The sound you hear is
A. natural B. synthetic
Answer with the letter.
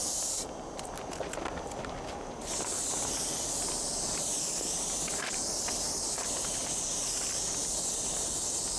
A